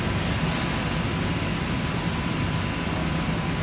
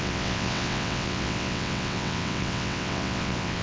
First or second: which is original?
first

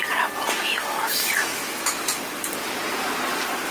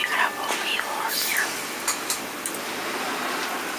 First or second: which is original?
second